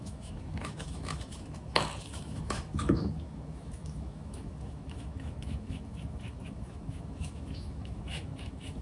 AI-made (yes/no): yes